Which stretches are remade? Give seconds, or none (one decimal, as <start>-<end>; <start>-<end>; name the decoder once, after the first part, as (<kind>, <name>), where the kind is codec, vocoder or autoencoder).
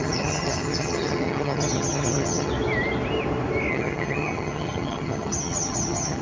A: 0.0-2.5 (vocoder, HiFi-GAN); 3.7-6.2